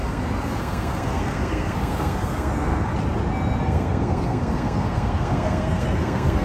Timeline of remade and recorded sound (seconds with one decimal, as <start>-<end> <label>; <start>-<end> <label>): 0.0-2.9 remade; 2.9-3.6 recorded; 3.6-6.4 remade